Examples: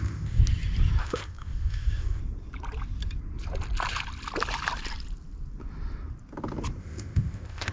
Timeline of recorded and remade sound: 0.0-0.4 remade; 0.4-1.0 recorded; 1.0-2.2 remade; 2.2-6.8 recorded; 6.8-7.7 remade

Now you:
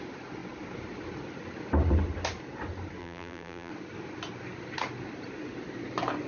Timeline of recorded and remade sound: 0.0-3.0 recorded; 3.0-3.7 remade; 3.7-6.3 recorded

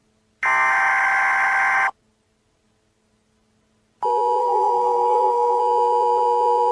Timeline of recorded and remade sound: 0.0-4.4 recorded; 4.4-5.6 remade; 5.6-6.7 recorded

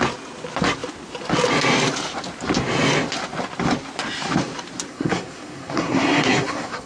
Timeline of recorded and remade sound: 0.0-4.9 recorded; 4.9-6.9 remade

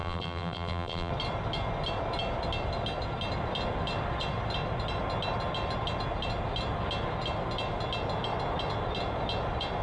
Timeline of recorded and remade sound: 0.0-1.1 remade; 1.1-9.8 recorded